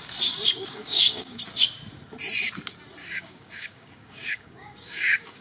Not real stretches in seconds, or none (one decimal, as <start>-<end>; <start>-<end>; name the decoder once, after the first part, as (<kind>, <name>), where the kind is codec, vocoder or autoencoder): 0.6-1.4 (codec, DAC); 3.0-5.4